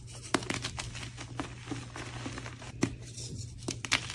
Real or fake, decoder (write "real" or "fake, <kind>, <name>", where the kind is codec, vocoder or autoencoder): real